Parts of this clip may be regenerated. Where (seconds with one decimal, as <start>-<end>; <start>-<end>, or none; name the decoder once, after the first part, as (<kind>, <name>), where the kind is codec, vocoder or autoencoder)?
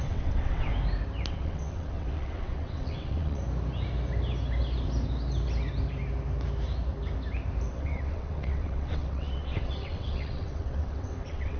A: 0.0-0.7 (vocoder, WaveNeXt); 1.3-3.4; 7.7-11.6